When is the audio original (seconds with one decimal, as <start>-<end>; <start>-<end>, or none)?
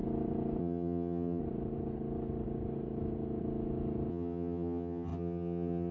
0.0-0.6; 1.4-4.1